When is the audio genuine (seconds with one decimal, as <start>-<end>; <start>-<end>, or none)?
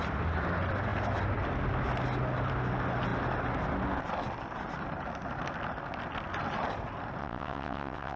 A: 0.0-7.2